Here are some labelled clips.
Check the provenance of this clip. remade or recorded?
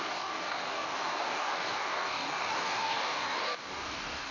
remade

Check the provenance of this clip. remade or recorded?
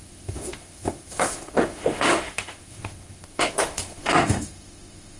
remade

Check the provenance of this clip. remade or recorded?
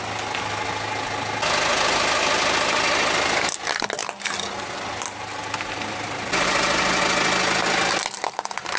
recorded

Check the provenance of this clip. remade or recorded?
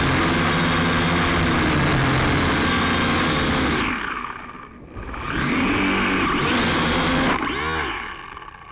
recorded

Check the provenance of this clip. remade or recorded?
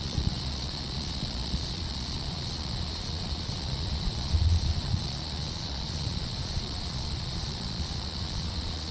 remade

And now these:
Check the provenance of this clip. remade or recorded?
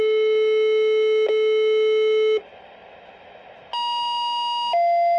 recorded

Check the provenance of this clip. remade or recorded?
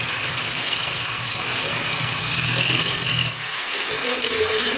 remade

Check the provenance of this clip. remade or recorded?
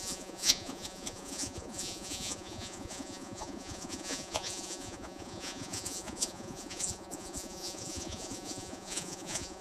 remade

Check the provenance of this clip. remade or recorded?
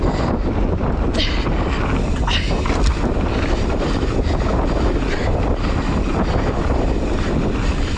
recorded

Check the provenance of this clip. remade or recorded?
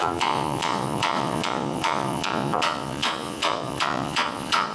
remade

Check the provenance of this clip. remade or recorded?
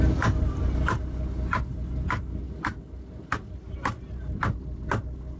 recorded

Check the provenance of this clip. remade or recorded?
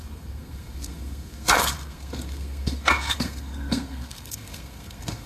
remade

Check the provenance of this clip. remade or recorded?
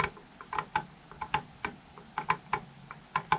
recorded